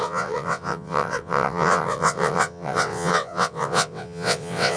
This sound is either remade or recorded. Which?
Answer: remade